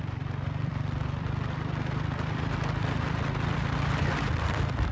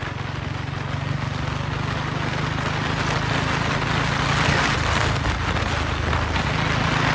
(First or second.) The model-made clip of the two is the first